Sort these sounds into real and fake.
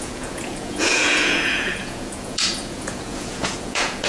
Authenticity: fake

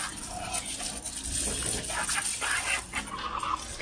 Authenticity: real